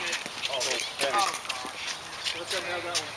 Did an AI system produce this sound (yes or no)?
no